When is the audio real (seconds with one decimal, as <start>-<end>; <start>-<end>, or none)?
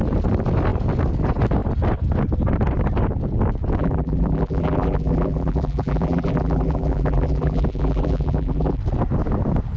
0.0-3.8; 8.8-9.8